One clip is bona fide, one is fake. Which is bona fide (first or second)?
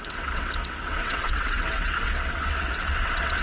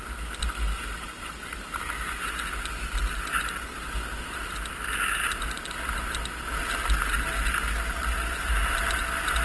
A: second